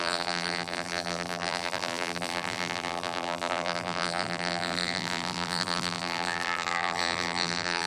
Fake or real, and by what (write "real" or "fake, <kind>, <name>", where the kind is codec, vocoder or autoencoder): fake, vocoder, BigVGAN v2